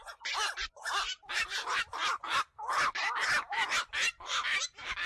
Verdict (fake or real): real